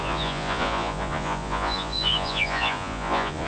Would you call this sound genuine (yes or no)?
no